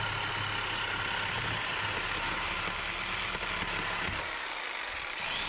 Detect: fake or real real